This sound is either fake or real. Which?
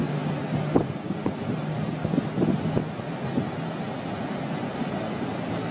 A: real